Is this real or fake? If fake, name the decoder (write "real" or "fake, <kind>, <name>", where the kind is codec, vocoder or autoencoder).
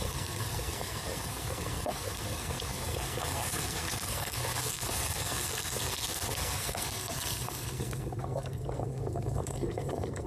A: fake, codec, SNAC